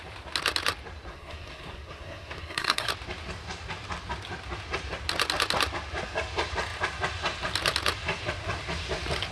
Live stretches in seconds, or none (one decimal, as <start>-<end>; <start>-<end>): 0.0-1.1; 2.9-9.3